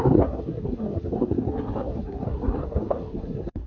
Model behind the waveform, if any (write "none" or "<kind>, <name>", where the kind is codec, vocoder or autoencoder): codec, SNAC